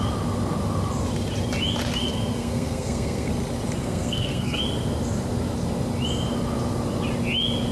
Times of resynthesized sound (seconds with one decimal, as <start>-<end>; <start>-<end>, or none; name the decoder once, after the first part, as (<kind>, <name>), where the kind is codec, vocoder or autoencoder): 2.0-3.3 (codec, SNAC); 3.8-4.6